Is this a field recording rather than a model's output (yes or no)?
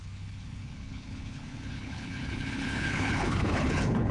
no